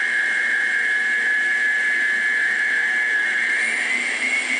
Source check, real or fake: real